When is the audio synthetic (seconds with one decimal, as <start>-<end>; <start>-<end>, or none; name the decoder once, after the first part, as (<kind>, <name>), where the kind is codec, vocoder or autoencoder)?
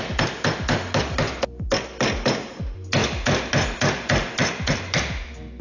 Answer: none